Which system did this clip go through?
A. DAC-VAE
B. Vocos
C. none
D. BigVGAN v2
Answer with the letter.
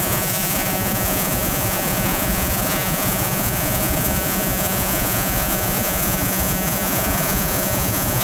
B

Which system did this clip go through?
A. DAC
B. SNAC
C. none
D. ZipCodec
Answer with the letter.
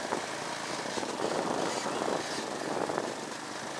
C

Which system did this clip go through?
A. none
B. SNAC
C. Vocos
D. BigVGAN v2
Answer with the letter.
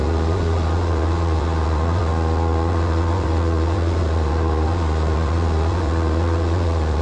C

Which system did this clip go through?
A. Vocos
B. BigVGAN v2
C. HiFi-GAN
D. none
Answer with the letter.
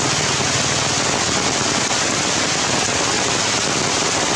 D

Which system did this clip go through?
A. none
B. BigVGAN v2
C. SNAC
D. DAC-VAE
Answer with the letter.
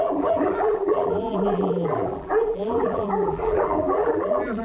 B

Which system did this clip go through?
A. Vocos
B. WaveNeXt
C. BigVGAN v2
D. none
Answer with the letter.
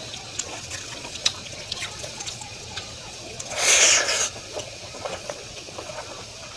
A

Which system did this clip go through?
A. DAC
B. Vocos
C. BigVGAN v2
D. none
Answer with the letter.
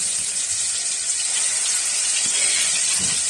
B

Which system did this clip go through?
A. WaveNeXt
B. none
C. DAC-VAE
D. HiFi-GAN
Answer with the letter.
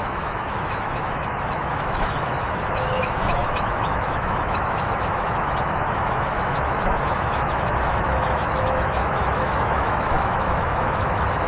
C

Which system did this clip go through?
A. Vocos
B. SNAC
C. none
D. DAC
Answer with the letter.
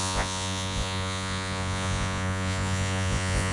A